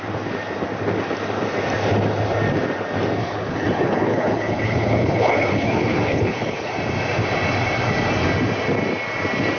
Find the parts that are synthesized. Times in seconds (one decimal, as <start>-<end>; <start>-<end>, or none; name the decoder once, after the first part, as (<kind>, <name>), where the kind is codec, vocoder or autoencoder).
3.2-6.7 (codec, HILCodec)